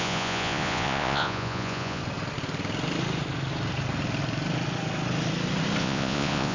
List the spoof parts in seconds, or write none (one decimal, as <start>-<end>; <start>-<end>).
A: 0.0-2.0; 5.8-6.5